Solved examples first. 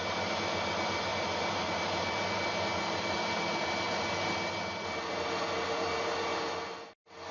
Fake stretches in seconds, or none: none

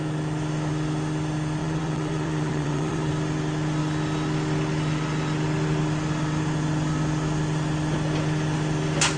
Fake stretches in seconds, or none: 1.6-3.1 (vocoder, WaveNeXt)

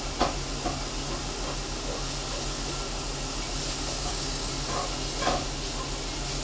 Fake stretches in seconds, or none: 4.0-4.5 (codec, DAC)

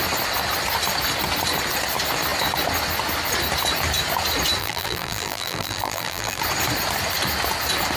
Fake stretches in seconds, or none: 4.6-6.4 (vocoder, BigVGAN v2)

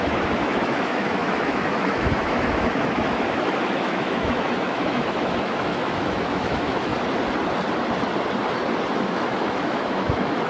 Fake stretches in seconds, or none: 0.0-6.9 (autoencoder, DAC-VAE); 8.9-10.5

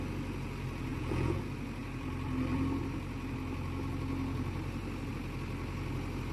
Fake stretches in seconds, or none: 0.9-1.4 (vocoder, Vocos)